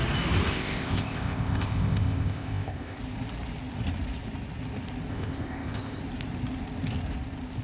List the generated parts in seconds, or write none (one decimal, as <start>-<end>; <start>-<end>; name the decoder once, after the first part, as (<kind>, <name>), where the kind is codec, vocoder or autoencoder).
0.5-3.0 (codec, ZipCodec); 5.1-6.0